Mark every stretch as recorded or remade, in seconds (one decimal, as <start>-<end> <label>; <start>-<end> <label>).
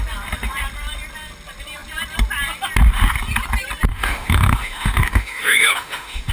0.0-3.9 recorded; 3.9-6.3 remade